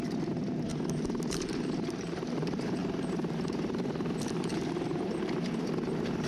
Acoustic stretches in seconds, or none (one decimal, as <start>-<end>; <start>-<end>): none

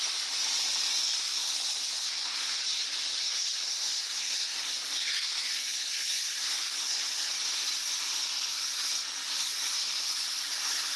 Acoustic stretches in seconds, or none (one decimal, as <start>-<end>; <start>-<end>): 0.0-0.9; 1.5-2.0; 2.6-3.2; 7.3-11.0

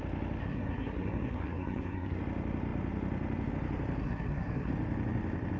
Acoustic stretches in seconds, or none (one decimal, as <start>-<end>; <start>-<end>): 0.0-0.4; 2.2-4.0; 4.7-5.6

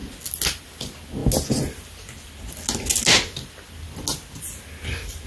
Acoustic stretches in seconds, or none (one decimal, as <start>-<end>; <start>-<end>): 0.0-5.3

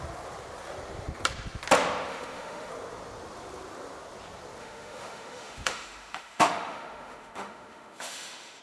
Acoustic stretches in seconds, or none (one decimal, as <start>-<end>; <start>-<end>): 0.0-2.1; 2.7-4.6

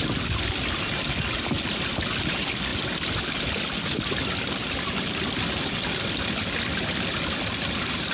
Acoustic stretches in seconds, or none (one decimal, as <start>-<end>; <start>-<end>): 0.0-8.1